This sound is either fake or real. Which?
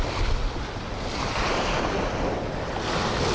real